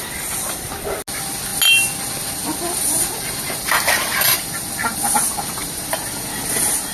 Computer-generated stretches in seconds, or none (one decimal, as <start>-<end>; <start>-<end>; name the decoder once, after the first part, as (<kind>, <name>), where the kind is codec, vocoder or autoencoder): 2.8-4.2 (vocoder, BigVGAN v2)